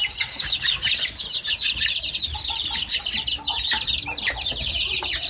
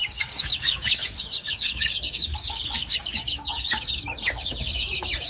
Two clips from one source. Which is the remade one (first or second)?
second